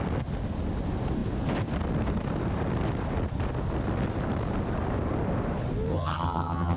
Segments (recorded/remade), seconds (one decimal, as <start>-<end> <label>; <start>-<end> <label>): 0.0-5.9 recorded; 5.9-6.8 remade